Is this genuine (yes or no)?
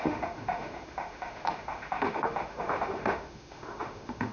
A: no